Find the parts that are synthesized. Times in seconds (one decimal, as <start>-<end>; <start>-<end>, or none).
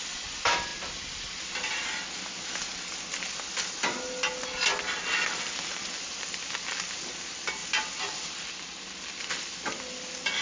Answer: 7.6-9.7